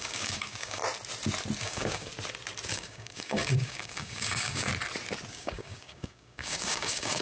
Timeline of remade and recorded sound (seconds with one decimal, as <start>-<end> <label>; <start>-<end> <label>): 0.0-0.8 remade; 0.8-1.6 recorded; 1.6-2.1 remade; 2.1-2.7 recorded; 2.7-4.7 remade; 4.7-5.3 recorded; 5.3-7.2 remade